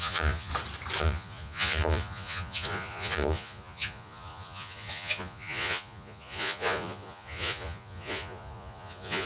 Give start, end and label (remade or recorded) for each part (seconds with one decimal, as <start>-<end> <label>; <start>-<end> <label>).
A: 0.0-0.5 remade; 0.5-1.0 recorded; 1.0-9.3 remade